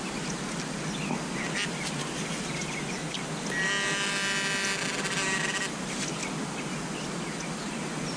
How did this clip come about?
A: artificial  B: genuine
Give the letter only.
B